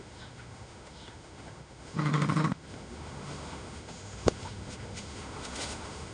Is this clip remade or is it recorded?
remade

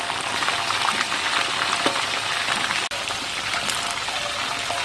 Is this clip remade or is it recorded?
recorded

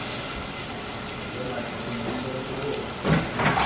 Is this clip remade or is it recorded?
recorded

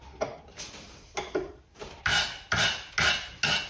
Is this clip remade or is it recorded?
recorded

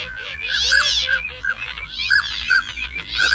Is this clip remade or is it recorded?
remade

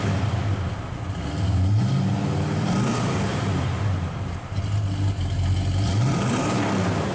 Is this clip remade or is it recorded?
recorded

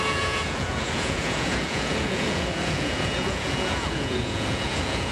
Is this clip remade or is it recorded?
remade